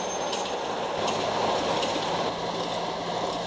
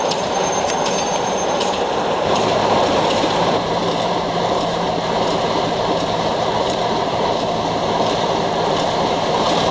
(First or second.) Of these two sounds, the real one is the first